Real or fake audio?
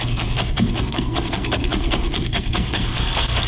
fake